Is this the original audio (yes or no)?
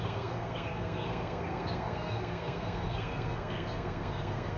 no